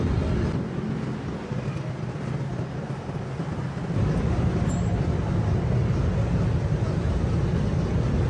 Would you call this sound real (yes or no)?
yes